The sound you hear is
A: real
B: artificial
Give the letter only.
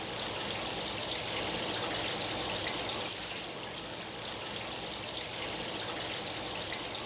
A